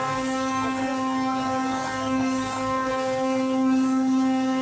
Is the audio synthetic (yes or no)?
yes